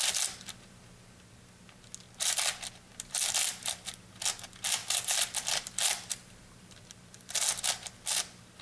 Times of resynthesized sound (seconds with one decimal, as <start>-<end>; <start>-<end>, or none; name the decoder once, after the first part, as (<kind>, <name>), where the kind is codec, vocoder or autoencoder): 2.9-3.9 (vocoder, BigVGAN v2); 4.8-7.4